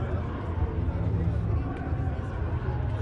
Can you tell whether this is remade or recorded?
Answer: recorded